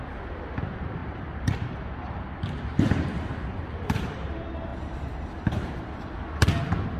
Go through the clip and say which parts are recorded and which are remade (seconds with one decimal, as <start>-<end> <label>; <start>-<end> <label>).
0.0-1.0 recorded; 1.0-4.3 remade; 4.3-4.7 recorded; 4.7-5.8 remade; 5.8-7.0 recorded